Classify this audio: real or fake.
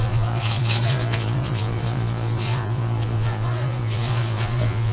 fake